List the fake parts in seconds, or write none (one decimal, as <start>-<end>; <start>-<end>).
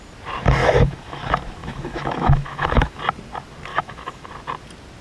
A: 0.6-1.2; 1.6-3.0; 3.7-4.3